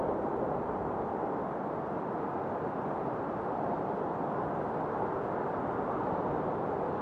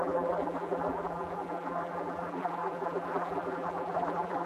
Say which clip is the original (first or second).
first